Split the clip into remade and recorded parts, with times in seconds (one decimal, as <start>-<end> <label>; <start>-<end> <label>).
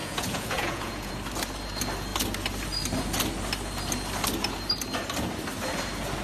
0.0-1.1 remade; 1.1-6.2 recorded